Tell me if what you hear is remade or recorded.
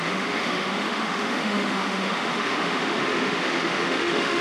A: remade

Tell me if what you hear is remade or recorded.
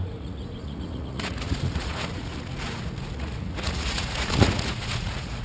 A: remade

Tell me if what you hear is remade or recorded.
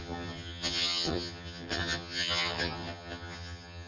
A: remade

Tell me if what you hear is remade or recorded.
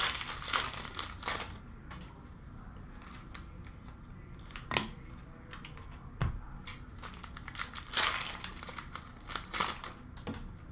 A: recorded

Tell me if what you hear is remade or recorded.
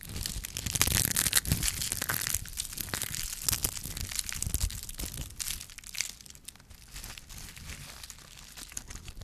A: recorded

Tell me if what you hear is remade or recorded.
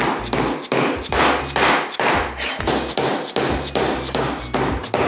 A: recorded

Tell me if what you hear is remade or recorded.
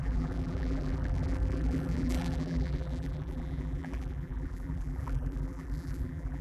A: remade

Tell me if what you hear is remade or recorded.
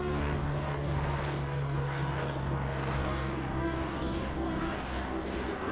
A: remade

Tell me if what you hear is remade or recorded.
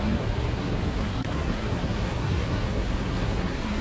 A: remade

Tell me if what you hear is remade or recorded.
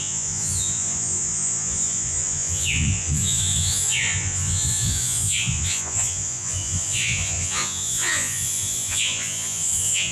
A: remade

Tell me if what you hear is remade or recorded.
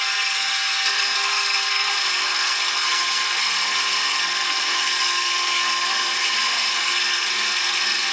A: remade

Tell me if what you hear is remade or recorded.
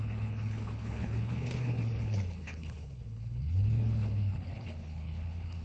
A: remade